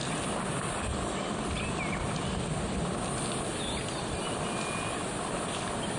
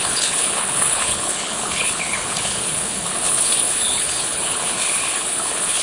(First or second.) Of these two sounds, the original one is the first